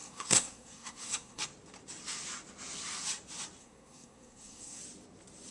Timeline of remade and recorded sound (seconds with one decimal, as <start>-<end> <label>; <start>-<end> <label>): 0.0-1.4 remade; 1.4-3.6 recorded; 3.6-4.8 remade; 4.8-5.5 recorded